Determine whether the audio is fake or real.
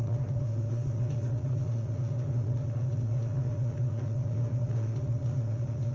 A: fake